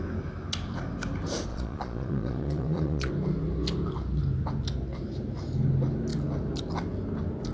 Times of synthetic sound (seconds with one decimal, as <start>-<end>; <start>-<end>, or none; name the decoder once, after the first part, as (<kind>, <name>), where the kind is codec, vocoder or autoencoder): 1.5-3.1 (vocoder, Vocos)